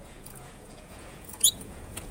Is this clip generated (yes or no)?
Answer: yes